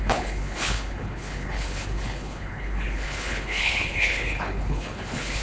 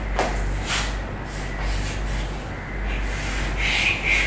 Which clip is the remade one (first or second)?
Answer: first